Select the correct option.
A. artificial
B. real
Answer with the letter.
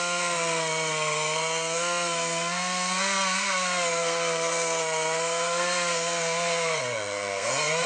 A